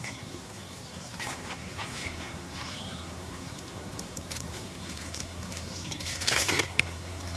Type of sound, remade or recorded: remade